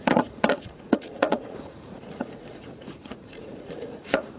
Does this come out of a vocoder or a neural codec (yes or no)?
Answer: yes